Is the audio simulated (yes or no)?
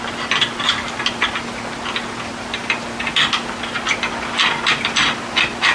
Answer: no